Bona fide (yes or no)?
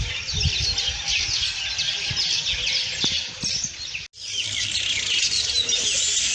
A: yes